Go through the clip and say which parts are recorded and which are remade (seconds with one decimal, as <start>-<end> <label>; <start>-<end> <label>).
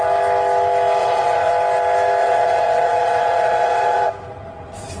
0.0-1.0 recorded; 1.0-1.5 remade; 1.5-2.2 recorded; 2.2-4.1 remade; 4.1-5.0 recorded